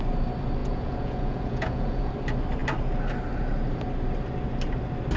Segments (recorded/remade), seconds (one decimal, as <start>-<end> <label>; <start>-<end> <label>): 0.0-0.6 recorded; 0.6-2.1 remade; 2.1-5.2 recorded